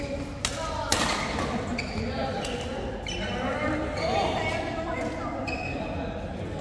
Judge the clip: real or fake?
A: real